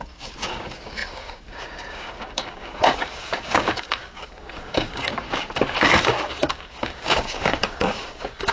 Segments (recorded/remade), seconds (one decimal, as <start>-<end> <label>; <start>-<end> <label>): 0.0-8.5 remade